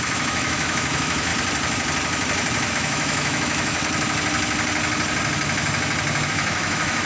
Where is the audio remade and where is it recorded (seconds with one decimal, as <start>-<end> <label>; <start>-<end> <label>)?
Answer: 0.0-1.3 remade; 1.3-2.7 recorded; 2.7-3.8 remade; 3.8-6.3 recorded; 6.3-7.1 remade